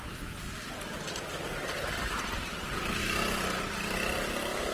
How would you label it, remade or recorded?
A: recorded